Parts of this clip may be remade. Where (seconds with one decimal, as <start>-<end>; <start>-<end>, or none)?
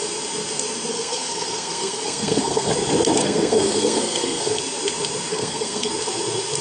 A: 0.9-2.7; 3.2-4.6; 5.3-5.9